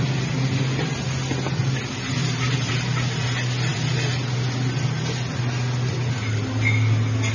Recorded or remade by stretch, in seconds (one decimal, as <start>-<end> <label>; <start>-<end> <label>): 0.0-2.2 recorded; 2.2-2.7 remade; 2.7-7.3 recorded